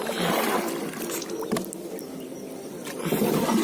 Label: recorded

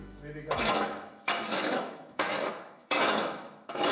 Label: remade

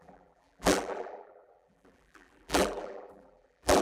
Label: remade